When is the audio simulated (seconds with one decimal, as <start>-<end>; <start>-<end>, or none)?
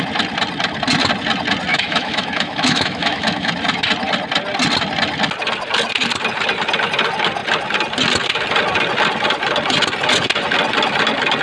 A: 1.7-3.5